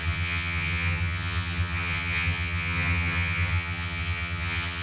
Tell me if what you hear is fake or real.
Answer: fake